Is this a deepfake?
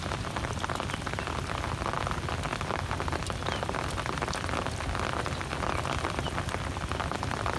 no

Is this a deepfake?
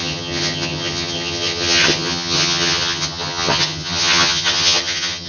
yes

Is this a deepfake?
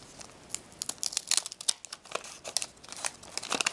no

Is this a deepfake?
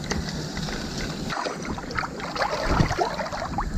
no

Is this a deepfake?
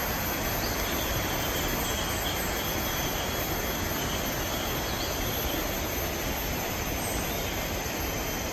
no